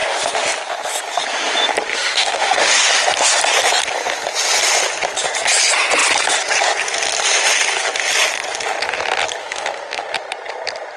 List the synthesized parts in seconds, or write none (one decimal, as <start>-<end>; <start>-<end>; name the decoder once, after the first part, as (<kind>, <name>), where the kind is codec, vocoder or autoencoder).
1.9-2.7 (autoencoder, DAC-VAE); 9.4-10.1